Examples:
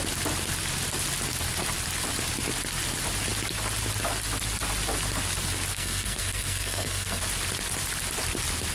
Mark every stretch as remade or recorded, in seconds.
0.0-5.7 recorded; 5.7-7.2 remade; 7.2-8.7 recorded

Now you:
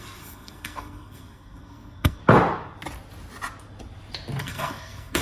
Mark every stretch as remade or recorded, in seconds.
0.0-2.2 remade; 2.2-4.4 recorded; 4.4-5.2 remade

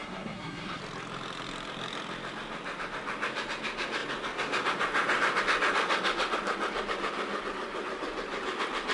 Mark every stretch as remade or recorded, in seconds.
0.0-0.8 remade; 0.8-8.9 recorded

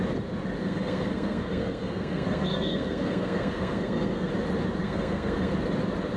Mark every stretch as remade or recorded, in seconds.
0.0-0.6 recorded; 0.6-4.3 remade; 4.3-4.8 recorded; 4.8-5.5 remade; 5.5-6.2 recorded

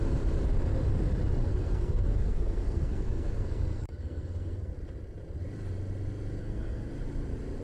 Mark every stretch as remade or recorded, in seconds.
0.0-1.4 recorded; 1.4-4.7 remade; 4.7-6.4 recorded; 6.4-6.9 remade; 6.9-7.6 recorded

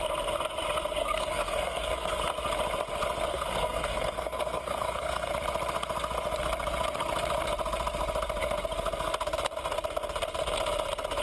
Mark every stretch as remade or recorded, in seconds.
0.0-1.0 recorded; 1.0-2.2 remade; 2.2-3.3 recorded; 3.3-5.3 remade; 5.3-11.2 recorded